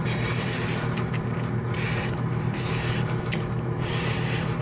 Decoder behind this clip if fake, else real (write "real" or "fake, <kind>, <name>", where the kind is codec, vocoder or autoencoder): fake, vocoder, BigVGAN v2